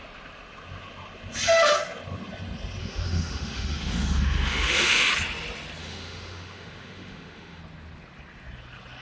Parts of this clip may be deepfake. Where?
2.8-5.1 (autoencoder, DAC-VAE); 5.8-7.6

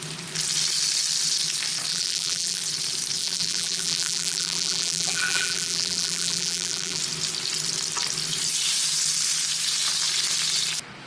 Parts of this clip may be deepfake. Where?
1.9-2.6 (vocoder, BigVGAN v2); 3.2-7.0

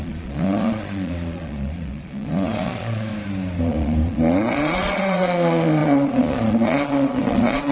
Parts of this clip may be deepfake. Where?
0.0-3.1 (vocoder, Vocos); 3.6-7.7